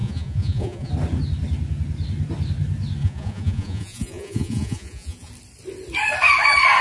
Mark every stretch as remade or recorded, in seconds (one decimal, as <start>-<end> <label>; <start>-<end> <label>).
0.0-0.9 remade; 0.9-3.0 recorded; 3.0-5.3 remade; 5.3-6.8 recorded